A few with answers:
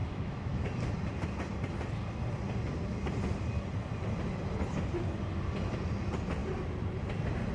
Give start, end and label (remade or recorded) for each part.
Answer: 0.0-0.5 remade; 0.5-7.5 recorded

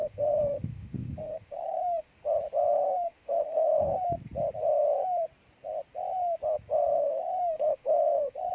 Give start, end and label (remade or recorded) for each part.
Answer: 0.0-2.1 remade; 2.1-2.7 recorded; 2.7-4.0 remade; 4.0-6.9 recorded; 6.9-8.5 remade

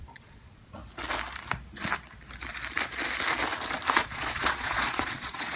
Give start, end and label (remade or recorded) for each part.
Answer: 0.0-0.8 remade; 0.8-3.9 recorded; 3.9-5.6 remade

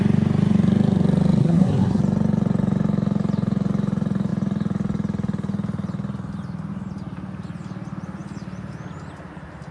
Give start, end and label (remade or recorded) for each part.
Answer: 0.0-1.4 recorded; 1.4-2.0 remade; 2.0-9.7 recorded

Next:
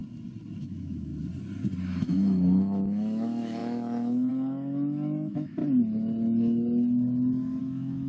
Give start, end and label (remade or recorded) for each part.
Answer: 0.0-0.6 recorded; 0.6-1.1 remade; 1.1-2.0 recorded; 2.0-5.6 remade; 5.6-7.6 recorded; 7.6-8.1 remade

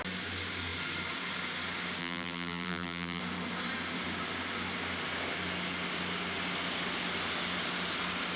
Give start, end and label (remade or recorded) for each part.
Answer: 0.0-2.0 recorded; 2.0-3.2 remade; 3.2-8.4 recorded

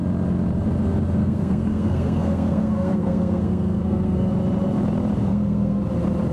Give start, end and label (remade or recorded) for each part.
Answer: 0.0-1.2 recorded; 1.2-4.3 remade; 4.3-5.2 recorded; 5.2-5.8 remade; 5.8-6.3 recorded